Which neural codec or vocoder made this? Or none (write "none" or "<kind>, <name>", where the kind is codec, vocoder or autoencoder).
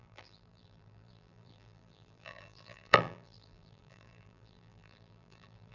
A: vocoder, BigVGAN v2